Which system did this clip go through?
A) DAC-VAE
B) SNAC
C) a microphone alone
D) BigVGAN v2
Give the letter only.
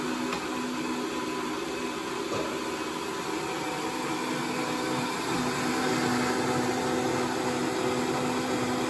C